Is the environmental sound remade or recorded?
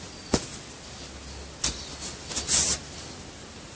recorded